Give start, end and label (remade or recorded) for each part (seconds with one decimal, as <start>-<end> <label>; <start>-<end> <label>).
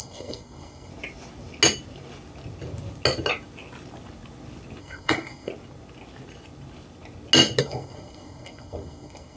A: 0.0-0.9 remade; 0.9-4.8 recorded; 4.8-5.5 remade; 5.5-7.6 recorded; 7.6-9.4 remade